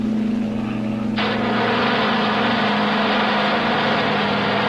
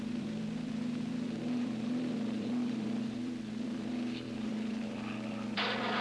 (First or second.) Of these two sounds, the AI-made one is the second